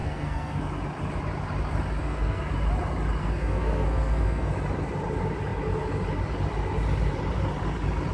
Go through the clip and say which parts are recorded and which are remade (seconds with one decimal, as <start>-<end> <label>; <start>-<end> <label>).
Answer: 0.0-0.6 remade; 0.6-2.0 recorded; 2.0-2.5 remade; 2.5-3.2 recorded; 3.2-4.5 remade; 4.5-8.1 recorded